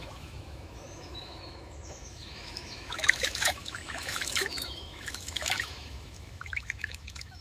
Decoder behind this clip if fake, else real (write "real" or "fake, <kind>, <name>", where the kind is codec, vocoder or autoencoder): fake, autoencoder, DAC-VAE